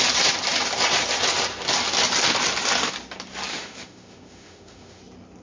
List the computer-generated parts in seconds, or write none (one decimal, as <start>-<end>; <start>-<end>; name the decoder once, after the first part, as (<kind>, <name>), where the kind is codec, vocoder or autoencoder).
3.5-5.0 (autoencoder, DAC-VAE)

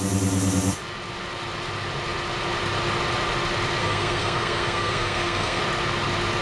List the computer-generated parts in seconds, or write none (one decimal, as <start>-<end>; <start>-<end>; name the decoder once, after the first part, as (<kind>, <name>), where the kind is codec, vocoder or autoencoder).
3.8-5.6 (codec, SNAC)

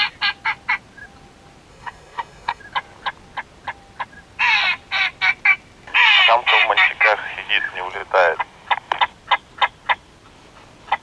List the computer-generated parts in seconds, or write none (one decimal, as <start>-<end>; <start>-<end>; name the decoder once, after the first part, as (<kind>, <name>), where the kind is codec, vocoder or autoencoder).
1.7-2.6 (codec, SNAC)

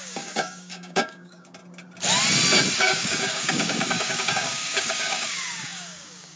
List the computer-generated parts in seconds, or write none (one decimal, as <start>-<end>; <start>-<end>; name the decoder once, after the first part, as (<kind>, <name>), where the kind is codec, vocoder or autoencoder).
0.0-1.6 (codec, DAC); 2.8-6.4

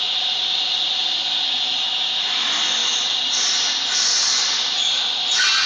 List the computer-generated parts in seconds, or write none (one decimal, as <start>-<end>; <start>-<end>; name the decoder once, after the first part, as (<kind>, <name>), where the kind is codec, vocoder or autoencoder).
none

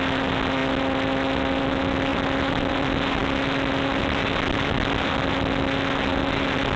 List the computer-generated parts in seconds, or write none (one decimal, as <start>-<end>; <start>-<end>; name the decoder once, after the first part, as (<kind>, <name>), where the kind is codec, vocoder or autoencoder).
2.1-2.7 (vocoder, BigVGAN v2)

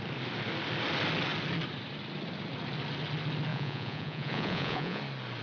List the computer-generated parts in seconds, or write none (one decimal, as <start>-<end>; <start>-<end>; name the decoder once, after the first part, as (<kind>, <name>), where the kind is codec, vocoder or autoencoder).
3.5-5.0 (vocoder, Vocos)